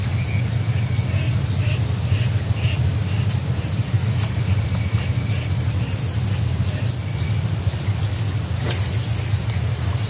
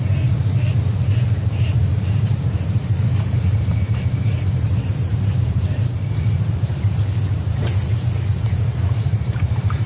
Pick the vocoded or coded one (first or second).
second